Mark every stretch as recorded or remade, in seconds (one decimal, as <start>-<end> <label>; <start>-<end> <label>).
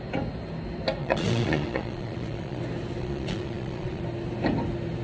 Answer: 0.0-1.0 recorded; 1.0-2.6 remade; 2.6-3.0 recorded; 3.0-4.0 remade; 4.0-5.0 recorded